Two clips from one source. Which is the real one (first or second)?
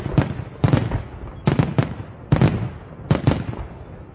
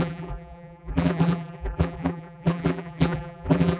first